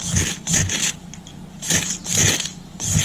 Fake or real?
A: real